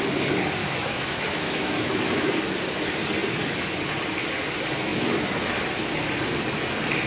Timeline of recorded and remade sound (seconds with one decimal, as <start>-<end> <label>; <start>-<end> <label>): 0.0-0.6 recorded; 0.6-2.3 remade; 2.3-4.9 recorded; 4.9-5.6 remade; 5.6-7.1 recorded